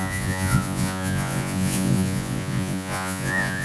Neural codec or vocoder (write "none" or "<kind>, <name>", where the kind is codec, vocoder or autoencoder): vocoder, Vocos